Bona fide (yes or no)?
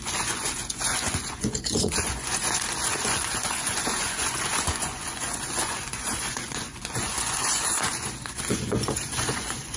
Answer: no